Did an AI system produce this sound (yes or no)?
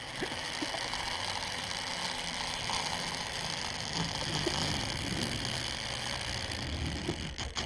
no